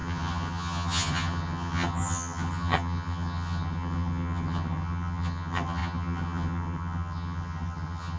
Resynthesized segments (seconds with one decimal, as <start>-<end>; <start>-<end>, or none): 0.0-8.2